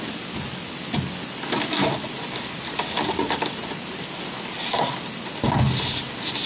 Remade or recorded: recorded